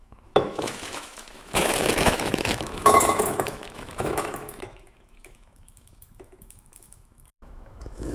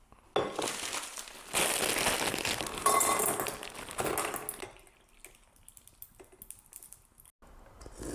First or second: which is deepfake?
first